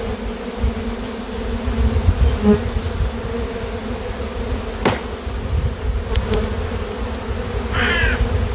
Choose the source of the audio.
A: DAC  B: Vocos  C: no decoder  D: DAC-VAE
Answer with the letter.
C